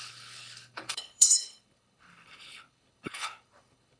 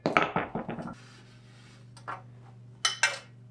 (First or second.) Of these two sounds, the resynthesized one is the first